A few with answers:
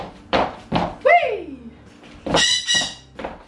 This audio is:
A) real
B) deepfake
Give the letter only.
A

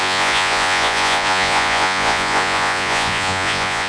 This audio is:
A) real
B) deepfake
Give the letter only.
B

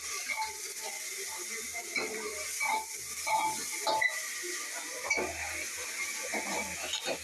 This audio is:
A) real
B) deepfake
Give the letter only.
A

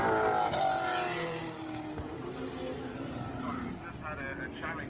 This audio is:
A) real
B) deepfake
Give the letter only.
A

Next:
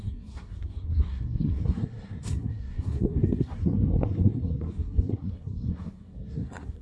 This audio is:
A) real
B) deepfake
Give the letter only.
B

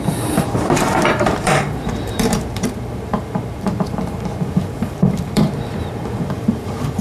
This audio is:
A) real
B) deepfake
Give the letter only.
B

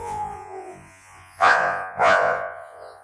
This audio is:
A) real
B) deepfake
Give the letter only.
B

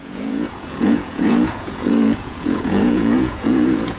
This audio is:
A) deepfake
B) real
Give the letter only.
A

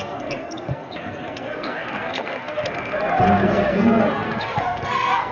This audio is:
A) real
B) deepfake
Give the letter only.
B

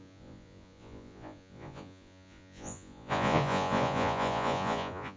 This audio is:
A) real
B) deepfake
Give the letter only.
B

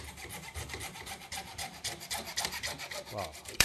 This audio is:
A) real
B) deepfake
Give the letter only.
B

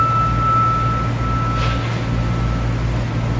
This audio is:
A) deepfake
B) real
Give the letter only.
B